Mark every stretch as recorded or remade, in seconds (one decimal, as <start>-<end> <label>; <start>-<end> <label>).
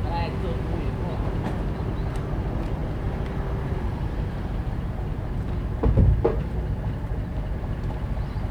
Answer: 0.0-8.5 recorded